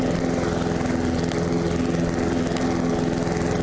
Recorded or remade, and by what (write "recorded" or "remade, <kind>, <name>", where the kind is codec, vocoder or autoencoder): recorded